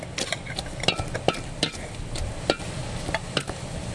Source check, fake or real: real